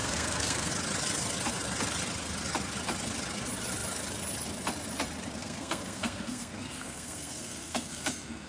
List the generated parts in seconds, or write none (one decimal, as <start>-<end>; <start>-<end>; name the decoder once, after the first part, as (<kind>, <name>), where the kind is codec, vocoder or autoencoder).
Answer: 0.0-0.7 (codec, SNAC); 5.4-8.5